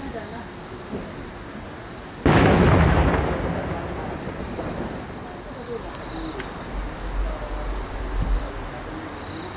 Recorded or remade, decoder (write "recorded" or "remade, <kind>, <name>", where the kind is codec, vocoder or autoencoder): recorded